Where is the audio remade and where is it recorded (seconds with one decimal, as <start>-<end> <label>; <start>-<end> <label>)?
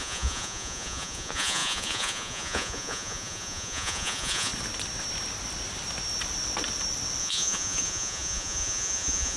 0.0-4.5 remade; 4.5-7.2 recorded; 7.2-9.4 remade